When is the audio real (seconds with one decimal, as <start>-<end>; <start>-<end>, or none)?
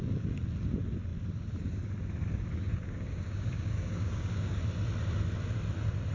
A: 0.0-2.7; 4.6-6.1